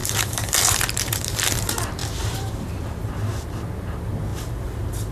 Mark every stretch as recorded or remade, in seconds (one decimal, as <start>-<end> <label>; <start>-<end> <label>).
0.0-1.6 remade; 1.6-2.0 recorded; 2.0-3.1 remade; 3.1-4.3 recorded; 4.3-5.1 remade